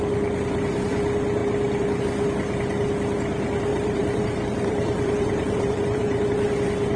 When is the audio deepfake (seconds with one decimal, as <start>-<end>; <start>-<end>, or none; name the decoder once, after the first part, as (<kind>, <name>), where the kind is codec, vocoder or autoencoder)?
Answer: 3.7-6.5 (vocoder, BigVGAN v2)